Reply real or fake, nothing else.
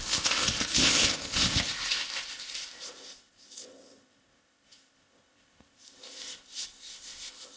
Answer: fake